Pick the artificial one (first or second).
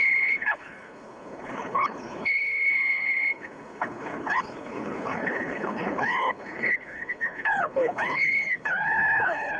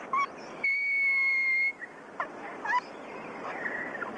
first